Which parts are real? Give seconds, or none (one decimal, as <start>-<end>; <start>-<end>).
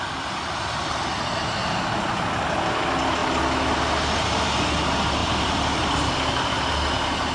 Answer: 0.0-5.2; 6.1-7.3